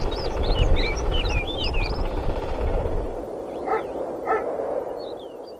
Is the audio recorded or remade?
remade